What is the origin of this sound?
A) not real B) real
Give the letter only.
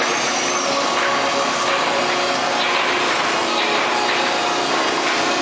B